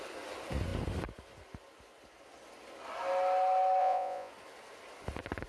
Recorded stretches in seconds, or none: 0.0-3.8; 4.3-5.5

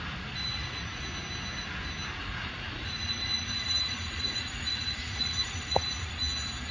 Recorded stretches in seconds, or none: 0.0-0.4; 1.0-2.2; 6.2-6.7